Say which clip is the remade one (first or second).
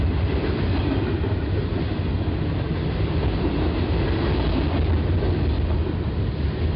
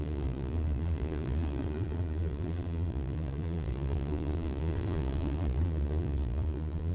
second